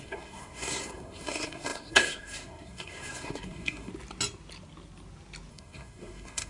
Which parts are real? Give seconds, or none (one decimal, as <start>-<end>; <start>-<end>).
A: 3.9-5.5